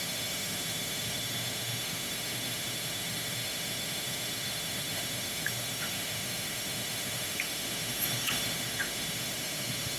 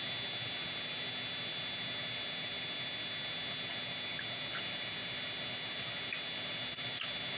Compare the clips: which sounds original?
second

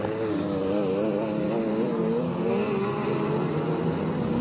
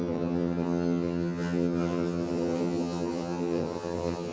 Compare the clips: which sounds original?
first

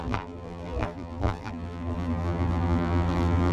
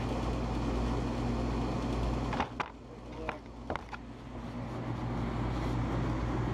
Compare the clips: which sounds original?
second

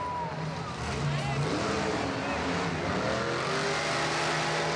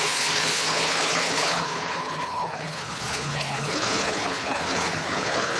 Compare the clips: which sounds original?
first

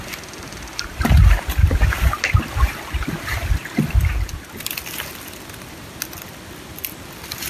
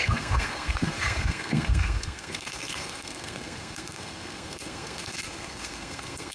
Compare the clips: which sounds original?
first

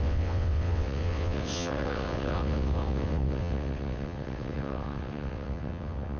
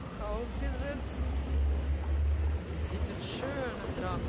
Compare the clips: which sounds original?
second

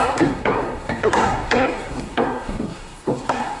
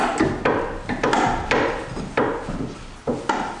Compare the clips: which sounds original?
second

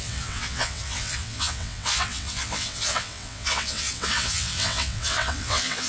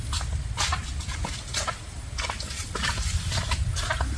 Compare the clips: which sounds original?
second